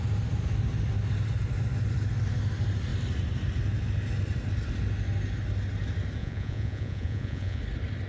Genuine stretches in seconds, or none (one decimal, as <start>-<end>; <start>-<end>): 0.0-6.2; 7.6-8.1